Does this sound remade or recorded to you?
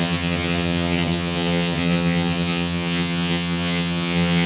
remade